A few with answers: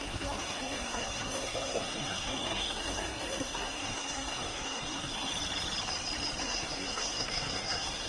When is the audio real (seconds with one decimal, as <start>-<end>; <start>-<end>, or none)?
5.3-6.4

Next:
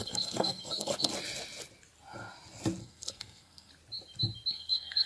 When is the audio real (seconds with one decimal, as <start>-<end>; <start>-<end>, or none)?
1.1-2.8; 3.7-4.5

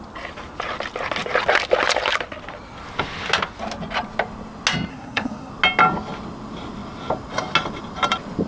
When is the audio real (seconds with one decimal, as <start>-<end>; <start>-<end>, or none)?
0.0-4.9; 5.5-8.5